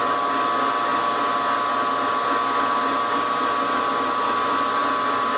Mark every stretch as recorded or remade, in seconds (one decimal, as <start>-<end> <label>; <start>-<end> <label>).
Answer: 0.0-5.4 recorded